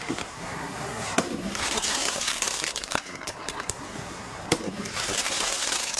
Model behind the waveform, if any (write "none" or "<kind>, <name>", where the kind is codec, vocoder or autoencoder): codec, SNAC